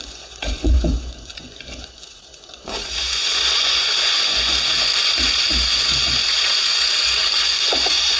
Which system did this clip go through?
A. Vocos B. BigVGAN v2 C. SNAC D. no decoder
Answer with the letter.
A